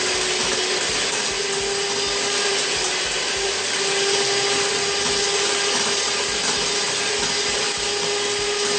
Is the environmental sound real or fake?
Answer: real